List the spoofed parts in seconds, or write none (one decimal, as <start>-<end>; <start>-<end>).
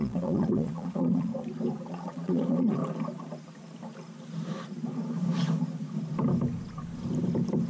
0.0-1.3; 1.9-2.8